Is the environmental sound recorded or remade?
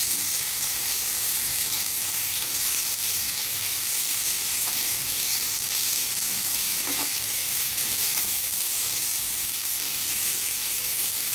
remade